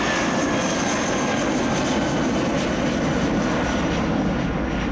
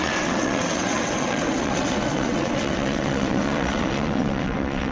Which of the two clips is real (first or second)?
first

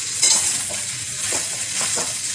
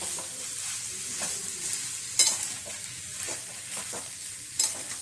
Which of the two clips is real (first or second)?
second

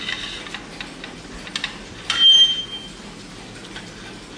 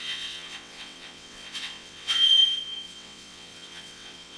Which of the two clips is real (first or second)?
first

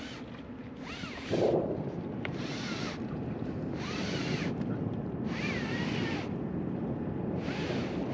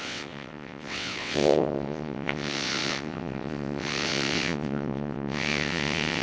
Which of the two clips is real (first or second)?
first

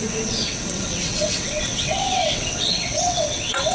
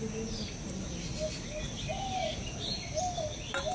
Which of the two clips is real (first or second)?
second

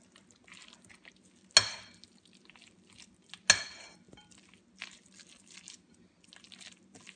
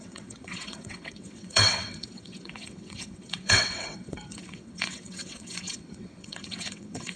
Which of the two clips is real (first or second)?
first